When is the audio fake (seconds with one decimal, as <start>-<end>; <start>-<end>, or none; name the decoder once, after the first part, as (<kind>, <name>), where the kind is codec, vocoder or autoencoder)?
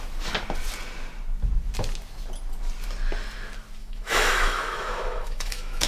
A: 3.8-5.9 (autoencoder, DAC-VAE)